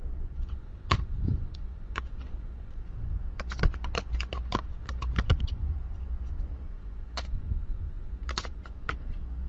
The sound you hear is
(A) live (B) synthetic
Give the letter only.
B